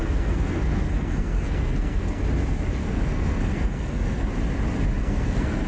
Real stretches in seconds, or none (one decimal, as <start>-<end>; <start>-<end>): 2.2-2.8; 4.3-5.0